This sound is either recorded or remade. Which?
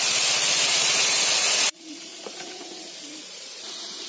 remade